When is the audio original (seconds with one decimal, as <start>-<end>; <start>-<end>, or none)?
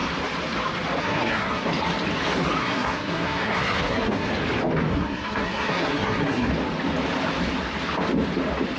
0.0-1.0; 1.7-2.6; 4.3-4.9; 6.5-8.8